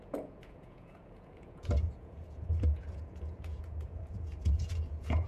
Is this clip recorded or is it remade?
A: remade